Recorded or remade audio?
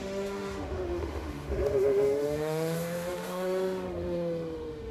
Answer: remade